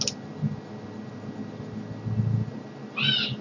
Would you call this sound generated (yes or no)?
no